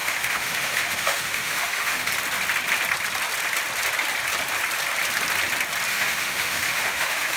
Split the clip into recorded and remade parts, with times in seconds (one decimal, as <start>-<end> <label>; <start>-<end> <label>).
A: 0.0-2.1 remade; 2.1-5.9 recorded; 5.9-7.4 remade